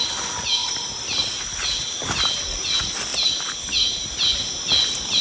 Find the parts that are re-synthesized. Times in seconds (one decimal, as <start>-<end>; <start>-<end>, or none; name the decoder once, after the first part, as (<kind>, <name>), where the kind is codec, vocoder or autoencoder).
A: none